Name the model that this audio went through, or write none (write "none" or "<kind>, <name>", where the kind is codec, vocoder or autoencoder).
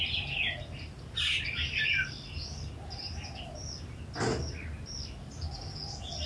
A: none